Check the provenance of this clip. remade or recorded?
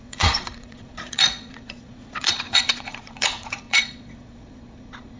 remade